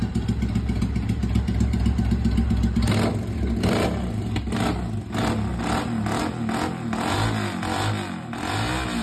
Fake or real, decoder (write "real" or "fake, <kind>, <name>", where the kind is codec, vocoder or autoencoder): real